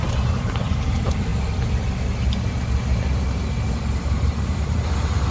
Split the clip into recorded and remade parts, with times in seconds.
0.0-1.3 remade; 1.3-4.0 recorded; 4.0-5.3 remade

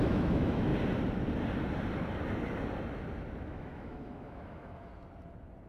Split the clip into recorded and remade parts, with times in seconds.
0.0-0.7 remade; 0.7-3.4 recorded; 3.4-4.9 remade; 4.9-5.7 recorded

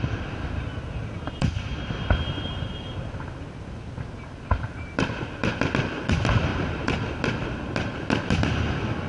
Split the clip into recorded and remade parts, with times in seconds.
0.0-9.1 remade

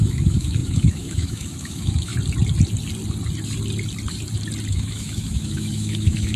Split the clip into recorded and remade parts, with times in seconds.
0.0-2.1 remade; 2.1-4.7 recorded; 4.7-6.4 remade

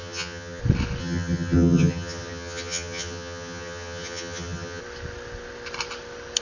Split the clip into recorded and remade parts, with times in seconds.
0.0-0.6 remade; 0.6-1.0 recorded; 1.0-4.8 remade; 4.8-6.4 recorded